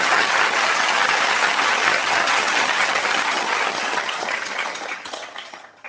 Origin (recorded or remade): remade